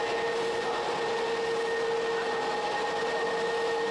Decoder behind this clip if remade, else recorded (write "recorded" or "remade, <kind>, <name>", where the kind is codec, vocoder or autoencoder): recorded